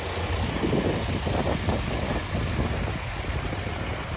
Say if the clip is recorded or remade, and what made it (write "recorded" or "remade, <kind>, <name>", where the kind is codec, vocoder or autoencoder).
recorded